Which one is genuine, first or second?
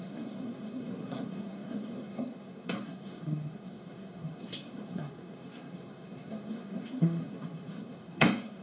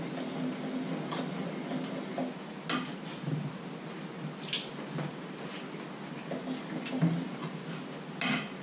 second